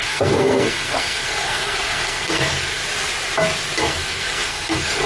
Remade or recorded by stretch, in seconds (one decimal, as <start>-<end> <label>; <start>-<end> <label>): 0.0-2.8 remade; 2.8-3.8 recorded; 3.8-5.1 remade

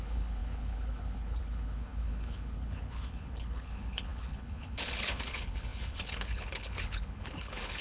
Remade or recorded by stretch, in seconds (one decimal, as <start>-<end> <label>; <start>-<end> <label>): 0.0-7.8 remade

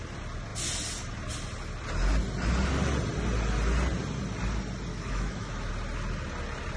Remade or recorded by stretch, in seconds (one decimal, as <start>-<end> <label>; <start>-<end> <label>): 0.0-4.9 recorded; 4.9-5.7 remade; 5.7-6.8 recorded

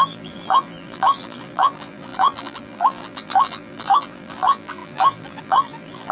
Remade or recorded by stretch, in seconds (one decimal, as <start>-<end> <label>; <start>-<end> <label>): 0.0-6.1 remade

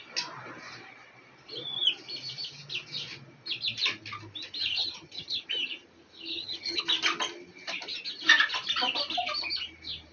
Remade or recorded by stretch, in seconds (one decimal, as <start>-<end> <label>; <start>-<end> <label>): 0.0-4.8 recorded; 4.8-5.4 remade; 5.4-6.3 recorded; 6.3-6.8 remade; 6.8-10.1 recorded

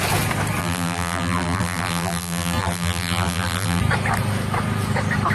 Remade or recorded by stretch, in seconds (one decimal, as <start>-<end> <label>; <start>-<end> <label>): 0.0-0.6 recorded; 0.6-3.8 remade; 3.8-5.3 recorded